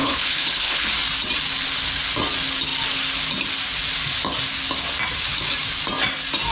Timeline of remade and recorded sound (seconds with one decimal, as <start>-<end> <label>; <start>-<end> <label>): 0.0-0.9 remade; 0.9-6.5 recorded